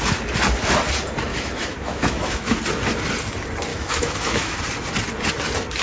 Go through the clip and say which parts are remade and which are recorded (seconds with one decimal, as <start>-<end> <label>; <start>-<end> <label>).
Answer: 0.0-1.3 recorded; 1.3-2.6 remade; 2.6-3.7 recorded; 3.7-4.6 remade; 4.6-5.8 recorded